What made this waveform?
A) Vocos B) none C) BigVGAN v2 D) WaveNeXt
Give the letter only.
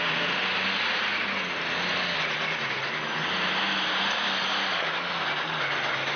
B